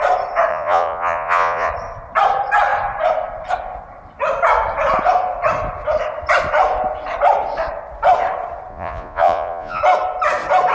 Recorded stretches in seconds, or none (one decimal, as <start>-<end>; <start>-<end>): 0.0-0.5; 1.7-8.7; 9.8-10.7